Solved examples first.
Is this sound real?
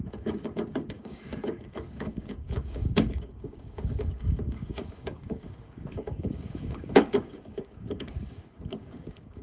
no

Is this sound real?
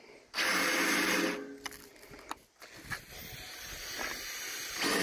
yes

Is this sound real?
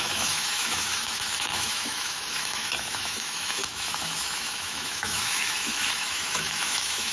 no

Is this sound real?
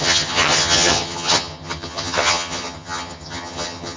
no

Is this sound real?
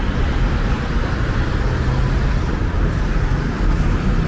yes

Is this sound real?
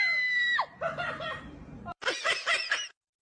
no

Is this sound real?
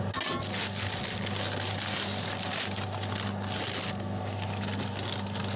yes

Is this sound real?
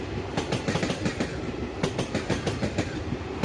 yes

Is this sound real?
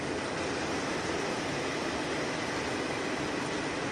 yes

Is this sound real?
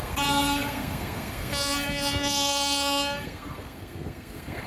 no